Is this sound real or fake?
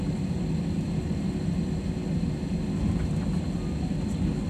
real